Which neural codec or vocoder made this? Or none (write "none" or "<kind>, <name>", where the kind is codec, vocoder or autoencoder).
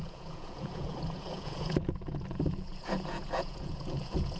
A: vocoder, Vocos